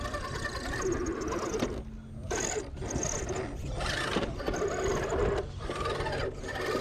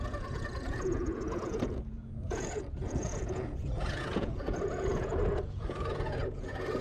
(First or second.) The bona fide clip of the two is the first